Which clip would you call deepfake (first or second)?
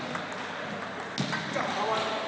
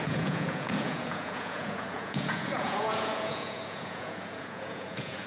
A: second